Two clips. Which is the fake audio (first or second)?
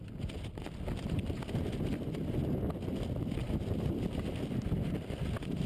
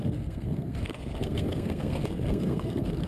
second